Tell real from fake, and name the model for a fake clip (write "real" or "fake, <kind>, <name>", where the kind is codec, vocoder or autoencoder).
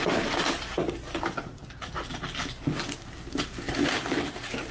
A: real